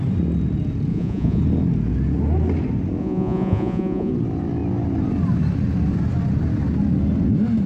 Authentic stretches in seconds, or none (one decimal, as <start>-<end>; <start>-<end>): 0.0-0.9; 1.4-3.0; 4.1-7.7

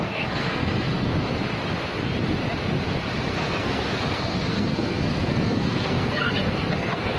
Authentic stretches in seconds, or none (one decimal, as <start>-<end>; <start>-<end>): 1.1-3.3

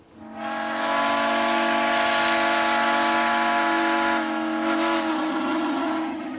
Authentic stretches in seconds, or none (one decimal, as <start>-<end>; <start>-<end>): 0.0-5.1

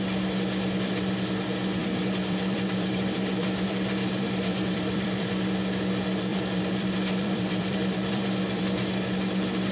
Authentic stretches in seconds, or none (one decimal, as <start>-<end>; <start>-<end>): 0.0-1.8; 5.3-6.3; 8.6-9.7

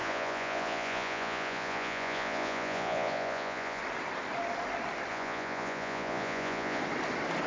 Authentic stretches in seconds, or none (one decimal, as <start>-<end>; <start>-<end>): 3.8-5.1; 6.8-7.5

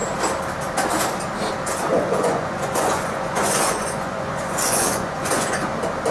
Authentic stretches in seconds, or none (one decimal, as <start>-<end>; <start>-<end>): 0.0-1.9; 5.6-6.1

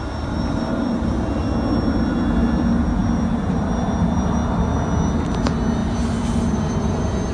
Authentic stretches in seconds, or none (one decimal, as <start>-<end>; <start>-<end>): 0.0-7.3

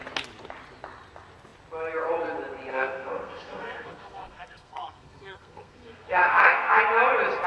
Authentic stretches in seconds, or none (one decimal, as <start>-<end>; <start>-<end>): 0.0-2.7; 6.8-7.5